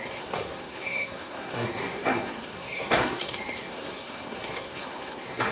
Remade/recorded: remade